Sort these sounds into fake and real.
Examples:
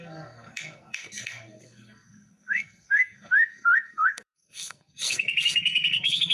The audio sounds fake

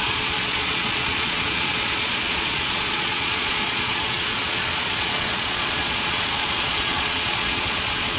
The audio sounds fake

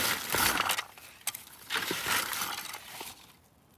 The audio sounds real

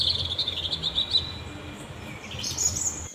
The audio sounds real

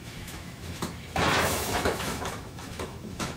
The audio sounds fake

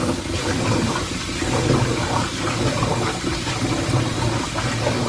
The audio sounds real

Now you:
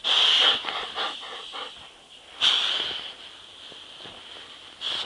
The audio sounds real